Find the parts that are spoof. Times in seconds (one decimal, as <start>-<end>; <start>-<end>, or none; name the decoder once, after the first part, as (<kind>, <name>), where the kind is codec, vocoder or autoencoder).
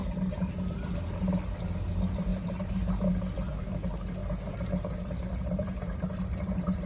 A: 2.3-3.1 (vocoder, BigVGAN v2); 4.2-6.9